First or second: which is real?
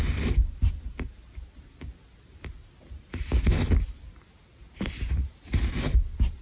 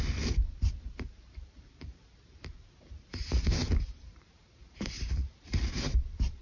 first